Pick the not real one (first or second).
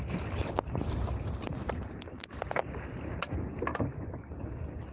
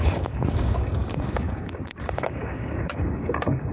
second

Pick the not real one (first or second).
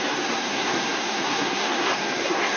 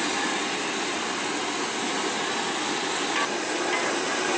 first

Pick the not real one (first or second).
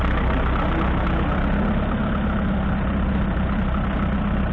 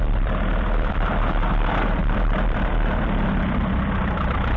second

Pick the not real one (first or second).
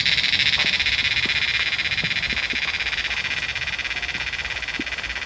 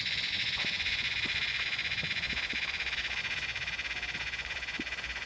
second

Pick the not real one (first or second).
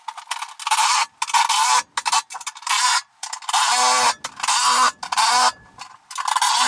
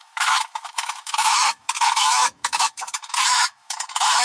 second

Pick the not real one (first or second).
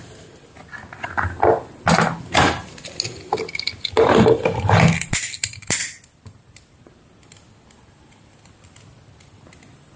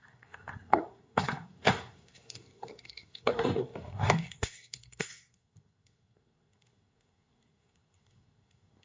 second